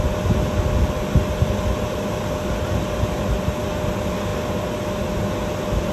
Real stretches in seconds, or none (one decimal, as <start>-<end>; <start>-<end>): 0.0-5.9